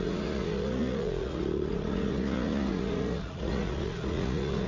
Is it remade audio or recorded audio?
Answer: remade